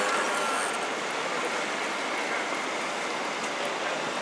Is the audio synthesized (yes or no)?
no